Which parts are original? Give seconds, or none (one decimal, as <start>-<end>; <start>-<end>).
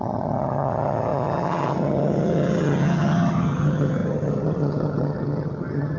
none